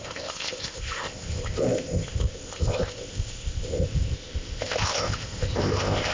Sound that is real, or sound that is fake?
fake